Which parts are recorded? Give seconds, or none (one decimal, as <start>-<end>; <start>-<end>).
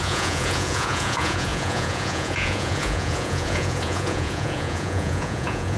none